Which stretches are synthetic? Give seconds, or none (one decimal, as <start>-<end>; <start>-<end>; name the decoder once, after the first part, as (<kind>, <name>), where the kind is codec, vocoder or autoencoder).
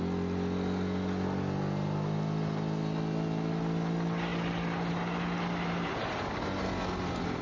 none